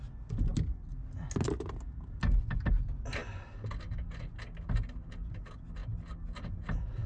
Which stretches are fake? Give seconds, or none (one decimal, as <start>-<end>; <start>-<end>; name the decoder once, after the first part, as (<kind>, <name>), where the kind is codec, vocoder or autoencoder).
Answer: none